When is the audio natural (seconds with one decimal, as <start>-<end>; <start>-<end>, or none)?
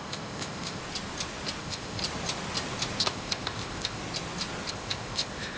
0.8-1.6; 2.0-3.0; 4.0-4.7